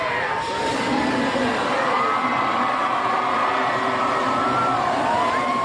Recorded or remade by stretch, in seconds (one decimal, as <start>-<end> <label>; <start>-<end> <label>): 0.0-5.6 remade